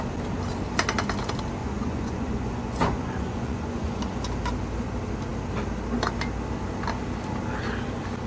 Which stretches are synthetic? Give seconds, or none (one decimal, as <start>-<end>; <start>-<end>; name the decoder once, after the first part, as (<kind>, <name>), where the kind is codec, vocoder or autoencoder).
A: 1.6-4.0 (vocoder, Vocos)